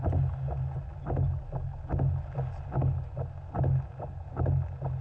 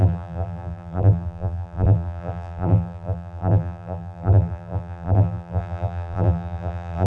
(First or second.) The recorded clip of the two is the first